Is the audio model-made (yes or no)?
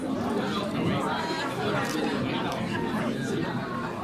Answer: no